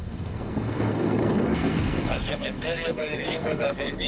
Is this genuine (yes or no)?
no